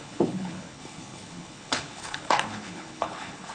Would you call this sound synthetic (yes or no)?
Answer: yes